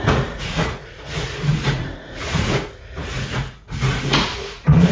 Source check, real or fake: fake